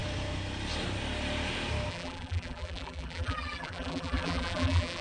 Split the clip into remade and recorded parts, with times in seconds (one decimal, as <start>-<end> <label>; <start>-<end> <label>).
0.0-1.9 recorded; 1.9-5.0 remade

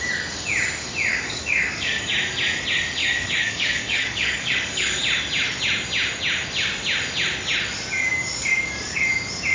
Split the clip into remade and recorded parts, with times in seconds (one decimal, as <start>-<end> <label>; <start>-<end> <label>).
0.0-1.1 recorded; 1.1-2.0 remade; 2.0-3.0 recorded; 3.0-5.0 remade; 5.0-8.1 recorded; 8.1-9.0 remade; 9.0-9.5 recorded

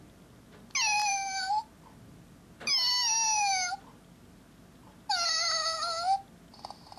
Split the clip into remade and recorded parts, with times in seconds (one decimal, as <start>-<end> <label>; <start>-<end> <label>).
0.0-1.0 recorded; 1.0-1.5 remade; 1.5-7.0 recorded

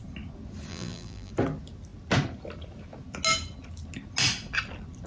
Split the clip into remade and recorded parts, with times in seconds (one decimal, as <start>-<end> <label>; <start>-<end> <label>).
0.0-0.7 recorded; 0.7-1.3 remade; 1.3-5.1 recorded

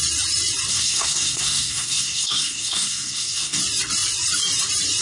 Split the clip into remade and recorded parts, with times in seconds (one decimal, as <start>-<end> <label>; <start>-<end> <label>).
0.0-0.7 recorded; 0.7-3.6 remade; 3.6-5.0 recorded

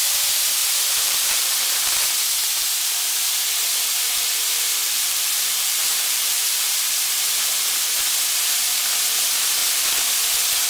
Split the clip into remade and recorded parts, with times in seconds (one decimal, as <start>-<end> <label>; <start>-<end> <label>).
0.0-0.6 recorded; 0.6-1.5 remade; 1.5-4.8 recorded; 4.8-7.8 remade; 7.8-10.7 recorded